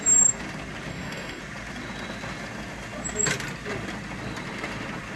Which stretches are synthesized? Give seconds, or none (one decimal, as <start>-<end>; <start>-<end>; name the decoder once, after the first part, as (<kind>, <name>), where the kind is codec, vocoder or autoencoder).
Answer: 0.9-1.4 (codec, SNAC)